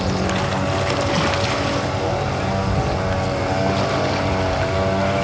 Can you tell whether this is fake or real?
real